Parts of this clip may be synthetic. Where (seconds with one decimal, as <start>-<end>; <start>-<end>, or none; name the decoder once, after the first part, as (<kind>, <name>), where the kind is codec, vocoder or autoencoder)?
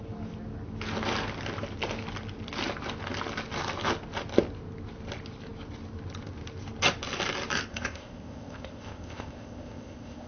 7.7-10.3 (codec, ZipCodec)